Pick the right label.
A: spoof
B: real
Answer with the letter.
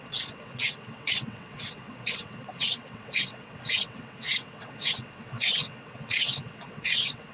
A